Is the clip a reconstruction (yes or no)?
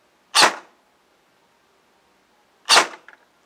no